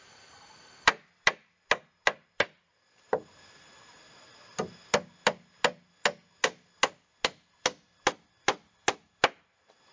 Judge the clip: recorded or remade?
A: recorded